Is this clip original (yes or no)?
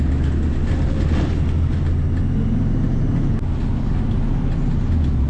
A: yes